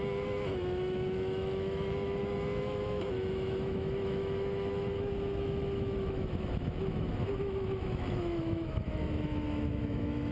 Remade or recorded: remade